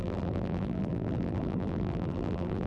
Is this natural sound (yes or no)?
no